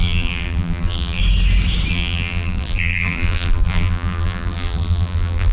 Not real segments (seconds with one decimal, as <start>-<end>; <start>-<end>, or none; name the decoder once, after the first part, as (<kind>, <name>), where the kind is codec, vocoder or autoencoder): 0.0-1.2 (vocoder, BigVGAN v2); 1.9-5.5